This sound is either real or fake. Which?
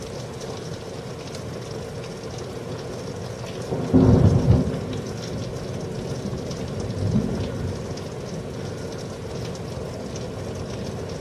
real